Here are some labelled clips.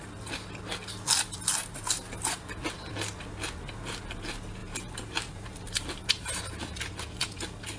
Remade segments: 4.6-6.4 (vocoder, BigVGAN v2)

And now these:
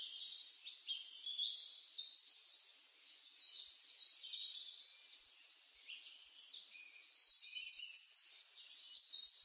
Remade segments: none

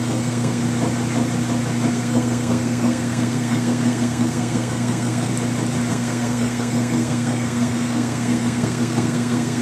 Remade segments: 0.0-0.6 (codec, SNAC); 1.9-5.3; 5.9-9.6

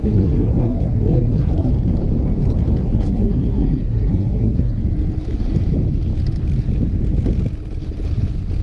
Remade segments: 0.0-1.7 (codec, SNAC); 2.8-4.8

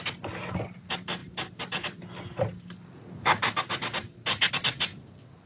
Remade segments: none

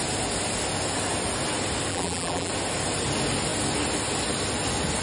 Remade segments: 1.9-2.5 (vocoder, BigVGAN v2)

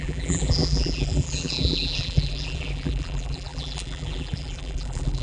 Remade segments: 0.0-5.2 (vocoder, BigVGAN v2)